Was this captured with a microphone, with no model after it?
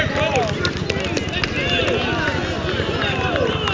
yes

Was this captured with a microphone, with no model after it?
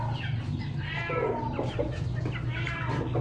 yes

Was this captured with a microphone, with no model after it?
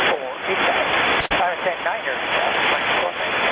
yes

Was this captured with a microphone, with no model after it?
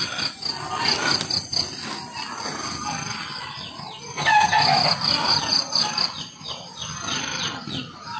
yes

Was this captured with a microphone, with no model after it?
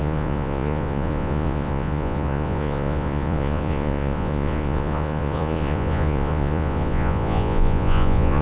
no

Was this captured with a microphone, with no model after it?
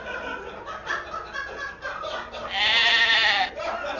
yes